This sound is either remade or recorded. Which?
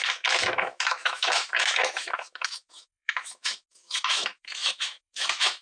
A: remade